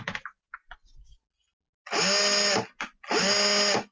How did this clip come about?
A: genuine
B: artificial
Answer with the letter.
A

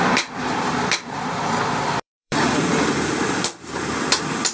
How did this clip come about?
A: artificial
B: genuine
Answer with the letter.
A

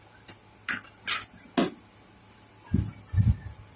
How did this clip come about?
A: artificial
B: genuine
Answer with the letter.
B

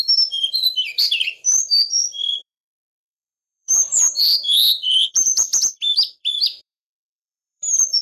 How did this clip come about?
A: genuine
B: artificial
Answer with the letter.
B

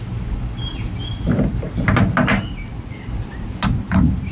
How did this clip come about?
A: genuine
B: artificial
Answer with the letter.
A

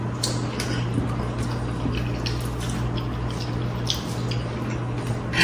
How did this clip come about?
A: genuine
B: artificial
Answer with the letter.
A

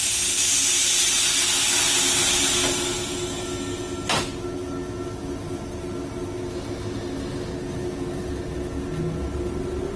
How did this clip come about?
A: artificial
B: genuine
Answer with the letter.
B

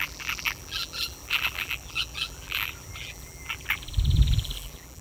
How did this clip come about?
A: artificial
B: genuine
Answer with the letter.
A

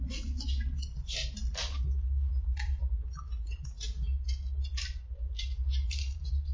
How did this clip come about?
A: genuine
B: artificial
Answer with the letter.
A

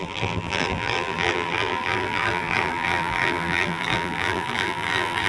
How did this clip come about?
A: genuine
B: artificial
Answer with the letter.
B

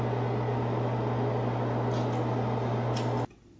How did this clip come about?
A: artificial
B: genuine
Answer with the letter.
B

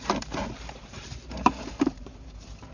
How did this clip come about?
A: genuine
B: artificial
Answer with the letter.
B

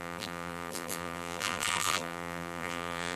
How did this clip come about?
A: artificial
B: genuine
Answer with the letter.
A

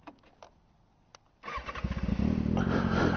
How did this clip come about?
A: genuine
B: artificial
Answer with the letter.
A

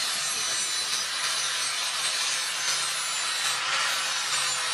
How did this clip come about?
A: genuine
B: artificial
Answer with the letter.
A